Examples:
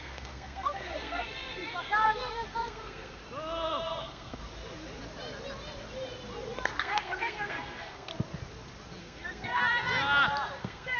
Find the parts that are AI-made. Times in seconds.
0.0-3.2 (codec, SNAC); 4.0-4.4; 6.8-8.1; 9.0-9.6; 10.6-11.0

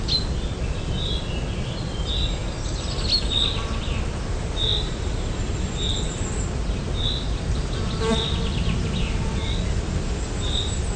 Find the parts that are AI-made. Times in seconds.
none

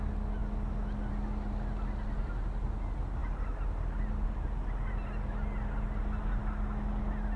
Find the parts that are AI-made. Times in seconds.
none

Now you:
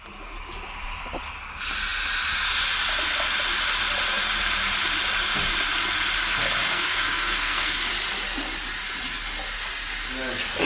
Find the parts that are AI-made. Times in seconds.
6.6-7.8 (codec, SNAC)

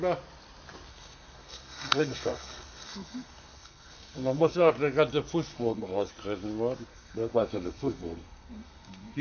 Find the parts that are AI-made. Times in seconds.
0.9-4.7 (codec, SNAC); 5.5-6.1; 6.9-9.2

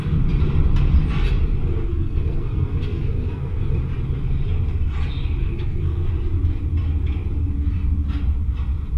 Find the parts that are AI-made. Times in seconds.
1.7-3.8 (codec, SNAC); 5.4-6.1